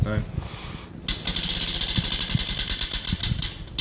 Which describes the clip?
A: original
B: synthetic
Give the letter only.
A